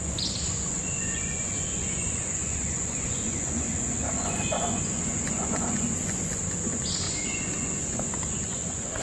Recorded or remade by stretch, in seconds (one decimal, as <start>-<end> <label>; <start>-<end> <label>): 0.0-9.0 remade